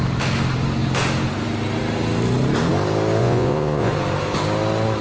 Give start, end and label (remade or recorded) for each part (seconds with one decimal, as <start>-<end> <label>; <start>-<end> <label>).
0.0-3.2 recorded; 3.2-3.9 remade; 3.9-5.0 recorded